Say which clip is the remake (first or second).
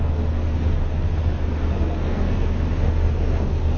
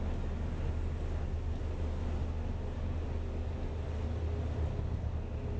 first